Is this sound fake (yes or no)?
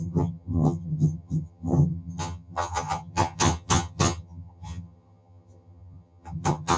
yes